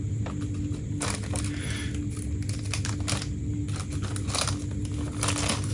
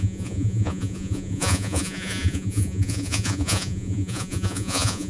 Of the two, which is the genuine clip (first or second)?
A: first